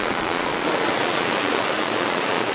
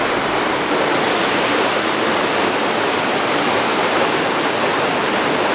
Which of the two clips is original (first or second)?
second